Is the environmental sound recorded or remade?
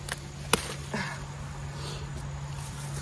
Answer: recorded